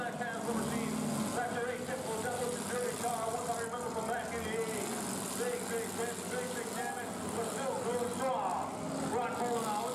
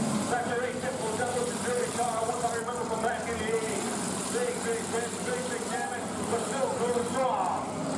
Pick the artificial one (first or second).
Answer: second